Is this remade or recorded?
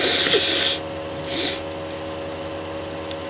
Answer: recorded